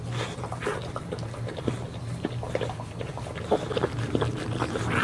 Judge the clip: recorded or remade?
recorded